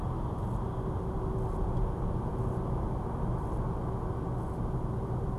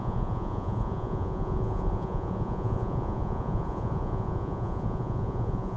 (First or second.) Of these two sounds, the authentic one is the first